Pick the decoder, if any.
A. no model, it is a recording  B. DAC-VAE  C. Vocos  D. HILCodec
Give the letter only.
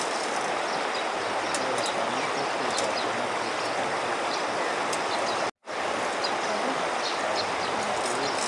A